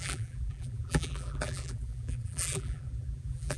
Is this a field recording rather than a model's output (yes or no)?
no